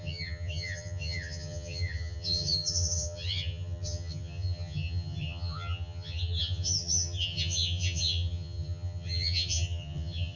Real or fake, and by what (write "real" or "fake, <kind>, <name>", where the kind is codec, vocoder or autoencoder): fake, vocoder, HiFi-GAN